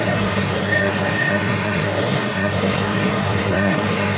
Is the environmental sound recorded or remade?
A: remade